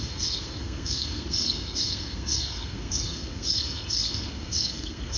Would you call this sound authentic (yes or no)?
no